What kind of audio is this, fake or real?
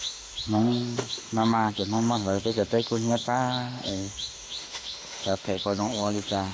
fake